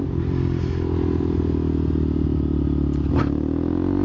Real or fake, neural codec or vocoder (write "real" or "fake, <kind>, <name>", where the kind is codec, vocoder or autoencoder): real